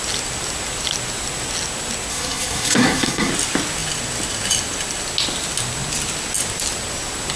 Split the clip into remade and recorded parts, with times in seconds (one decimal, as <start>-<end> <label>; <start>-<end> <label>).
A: 0.0-2.1 recorded; 2.1-3.3 remade; 3.3-7.4 recorded